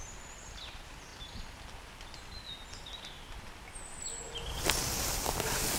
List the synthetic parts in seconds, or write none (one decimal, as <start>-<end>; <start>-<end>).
0.0-1.1; 4.6-5.8